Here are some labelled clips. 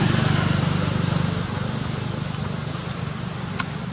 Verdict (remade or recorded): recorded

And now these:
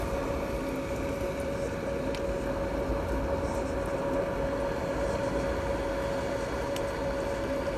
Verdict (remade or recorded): recorded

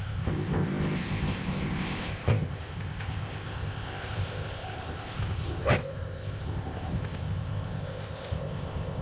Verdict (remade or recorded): remade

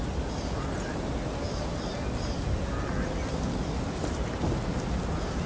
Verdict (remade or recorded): recorded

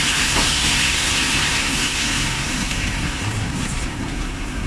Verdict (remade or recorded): remade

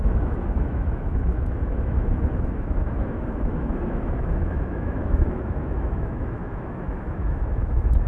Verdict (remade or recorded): remade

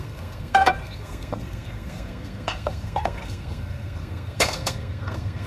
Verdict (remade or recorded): remade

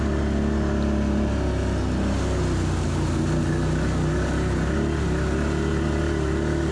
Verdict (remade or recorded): recorded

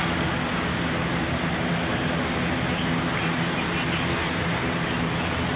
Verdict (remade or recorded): recorded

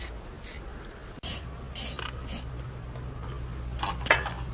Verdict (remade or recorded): recorded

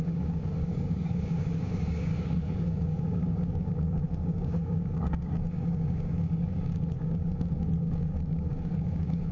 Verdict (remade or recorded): remade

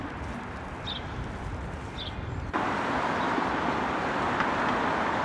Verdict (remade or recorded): recorded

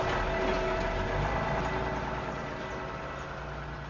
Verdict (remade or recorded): recorded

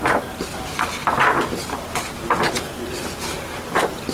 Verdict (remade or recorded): recorded